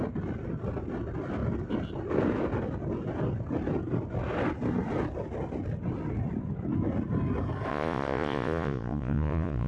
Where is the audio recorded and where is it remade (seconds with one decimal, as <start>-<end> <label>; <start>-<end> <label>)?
0.0-7.7 recorded; 7.7-9.7 remade